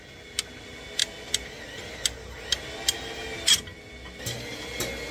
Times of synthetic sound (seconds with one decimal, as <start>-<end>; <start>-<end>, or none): none